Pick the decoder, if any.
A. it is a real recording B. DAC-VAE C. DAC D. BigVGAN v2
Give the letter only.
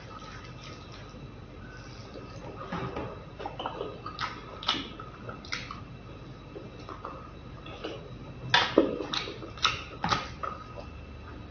A